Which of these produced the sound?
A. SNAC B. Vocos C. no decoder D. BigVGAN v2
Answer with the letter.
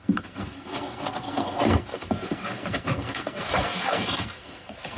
A